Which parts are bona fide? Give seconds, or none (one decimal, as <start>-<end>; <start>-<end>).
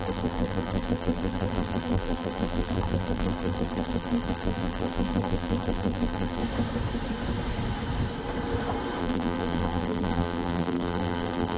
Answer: 6.4-9.0